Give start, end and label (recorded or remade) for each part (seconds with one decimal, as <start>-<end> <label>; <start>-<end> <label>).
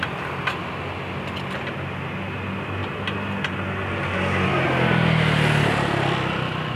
0.0-6.8 recorded